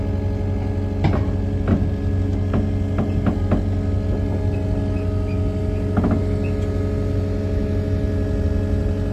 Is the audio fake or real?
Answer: real